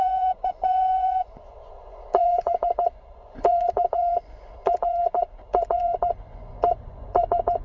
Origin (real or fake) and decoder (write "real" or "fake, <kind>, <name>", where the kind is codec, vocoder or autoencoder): fake, vocoder, Vocos